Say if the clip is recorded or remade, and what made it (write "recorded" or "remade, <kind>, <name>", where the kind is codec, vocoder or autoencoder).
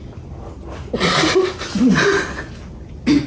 recorded